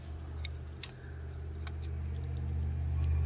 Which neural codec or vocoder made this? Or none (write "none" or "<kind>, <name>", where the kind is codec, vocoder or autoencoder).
none